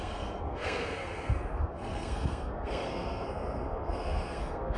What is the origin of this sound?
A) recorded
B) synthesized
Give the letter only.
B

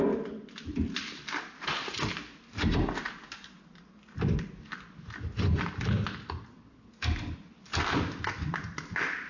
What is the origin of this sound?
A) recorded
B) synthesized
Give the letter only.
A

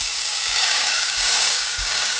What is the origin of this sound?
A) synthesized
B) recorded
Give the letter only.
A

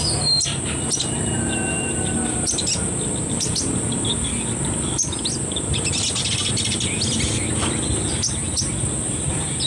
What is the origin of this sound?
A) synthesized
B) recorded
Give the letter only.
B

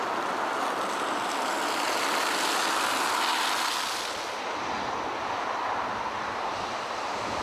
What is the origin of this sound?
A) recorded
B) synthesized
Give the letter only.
A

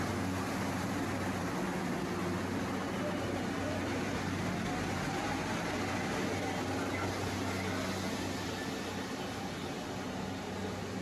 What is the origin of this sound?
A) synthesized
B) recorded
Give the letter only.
B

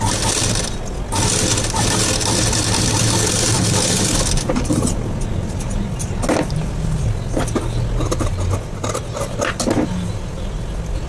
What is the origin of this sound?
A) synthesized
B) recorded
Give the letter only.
B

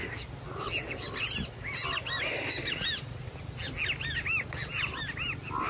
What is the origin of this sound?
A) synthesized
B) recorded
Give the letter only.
B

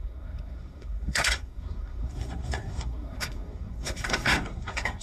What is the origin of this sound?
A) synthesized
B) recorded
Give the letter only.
A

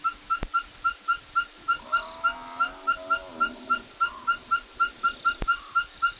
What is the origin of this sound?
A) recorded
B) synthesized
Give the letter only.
A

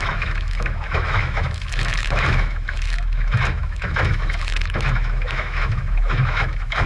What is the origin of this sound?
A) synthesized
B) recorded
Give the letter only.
A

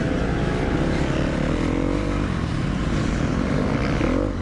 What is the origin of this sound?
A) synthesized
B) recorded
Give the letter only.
B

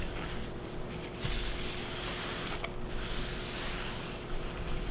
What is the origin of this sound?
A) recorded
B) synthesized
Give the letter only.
A